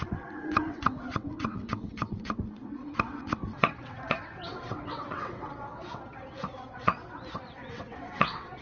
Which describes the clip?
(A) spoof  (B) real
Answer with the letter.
A